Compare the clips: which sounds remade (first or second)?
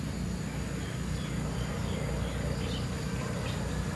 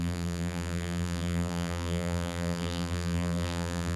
second